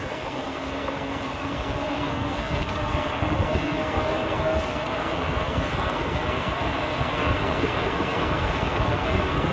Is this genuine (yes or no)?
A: no